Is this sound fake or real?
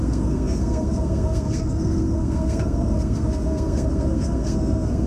fake